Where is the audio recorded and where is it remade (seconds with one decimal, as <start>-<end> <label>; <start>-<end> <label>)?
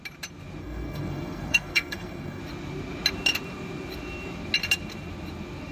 0.0-0.6 recorded; 0.6-2.4 remade; 2.4-5.7 recorded